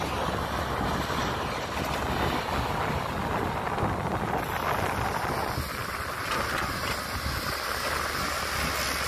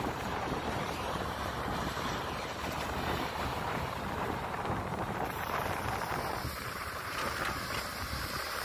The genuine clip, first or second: first